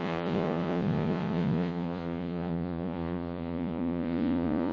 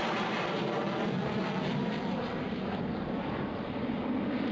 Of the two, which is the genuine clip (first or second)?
second